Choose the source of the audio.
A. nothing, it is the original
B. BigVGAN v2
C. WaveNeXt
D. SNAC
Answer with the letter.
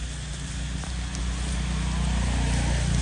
A